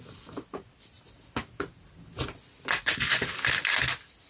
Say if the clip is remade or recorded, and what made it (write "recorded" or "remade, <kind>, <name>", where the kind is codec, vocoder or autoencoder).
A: recorded